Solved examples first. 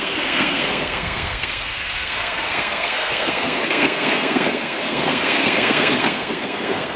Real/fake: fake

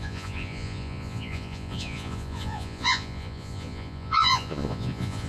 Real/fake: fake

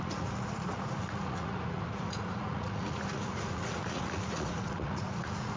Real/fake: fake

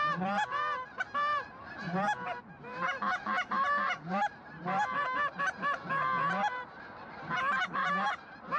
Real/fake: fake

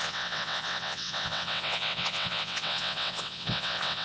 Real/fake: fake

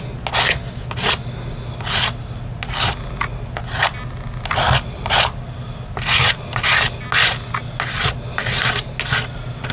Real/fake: real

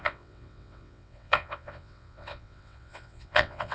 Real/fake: fake